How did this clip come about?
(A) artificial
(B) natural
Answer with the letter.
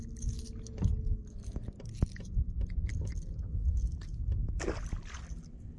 B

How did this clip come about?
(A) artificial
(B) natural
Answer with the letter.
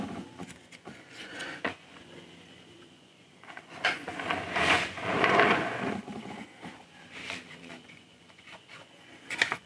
A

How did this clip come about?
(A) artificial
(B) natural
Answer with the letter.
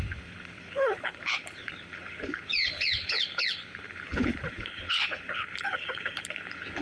A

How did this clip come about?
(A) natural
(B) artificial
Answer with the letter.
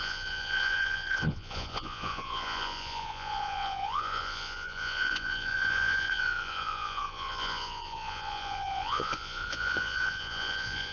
B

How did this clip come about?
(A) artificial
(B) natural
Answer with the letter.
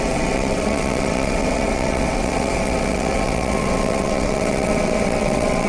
A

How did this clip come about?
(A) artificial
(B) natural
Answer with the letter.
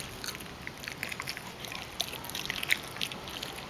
B